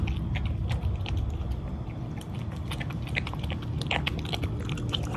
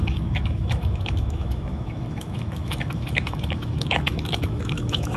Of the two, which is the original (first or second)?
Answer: first